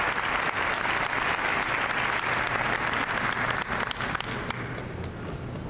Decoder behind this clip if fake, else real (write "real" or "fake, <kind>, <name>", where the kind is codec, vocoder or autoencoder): real